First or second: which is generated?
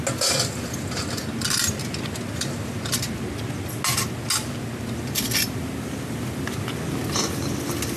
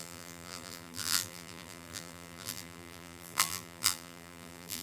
second